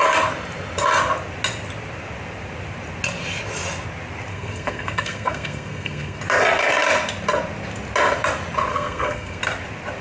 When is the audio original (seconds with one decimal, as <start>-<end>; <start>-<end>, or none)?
0.0-4.3; 6.2-8.7; 9.4-10.0